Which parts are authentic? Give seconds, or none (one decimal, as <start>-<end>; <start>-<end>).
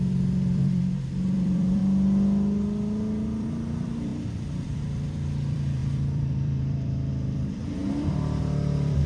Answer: 1.8-3.4; 7.8-8.4